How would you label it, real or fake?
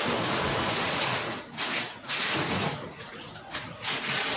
fake